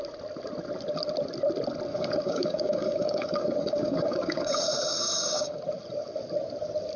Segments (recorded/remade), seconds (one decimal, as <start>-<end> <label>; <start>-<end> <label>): 0.0-1.9 recorded; 1.9-4.5 remade; 4.5-4.9 recorded; 4.9-5.6 remade; 5.6-7.0 recorded